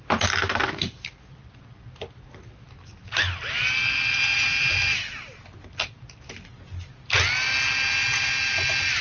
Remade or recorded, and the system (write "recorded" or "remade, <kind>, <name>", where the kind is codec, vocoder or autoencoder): recorded